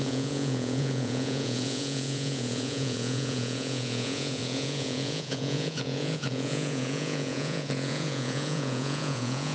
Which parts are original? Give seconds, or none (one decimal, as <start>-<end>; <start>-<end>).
none